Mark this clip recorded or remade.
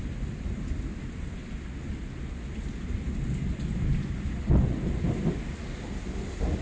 recorded